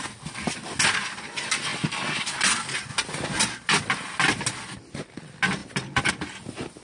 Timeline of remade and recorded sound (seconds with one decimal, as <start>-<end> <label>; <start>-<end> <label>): 0.0-6.8 recorded